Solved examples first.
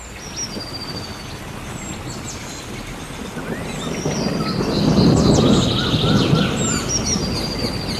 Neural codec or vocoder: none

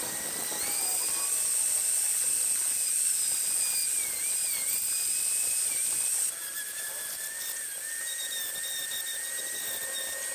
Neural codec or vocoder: none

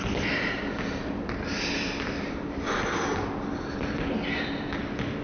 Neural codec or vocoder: none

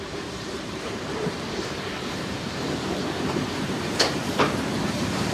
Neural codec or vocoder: vocoder, BigVGAN v2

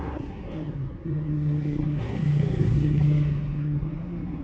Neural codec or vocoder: codec, SNAC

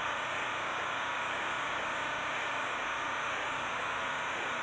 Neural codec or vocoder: codec, DAC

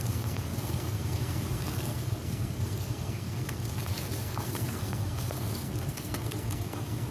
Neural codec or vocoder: codec, SNAC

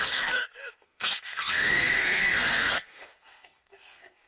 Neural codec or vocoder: codec, SNAC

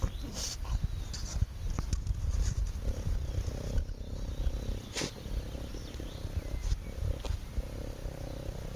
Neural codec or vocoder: none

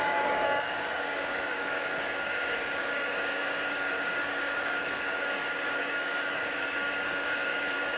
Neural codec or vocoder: codec, DAC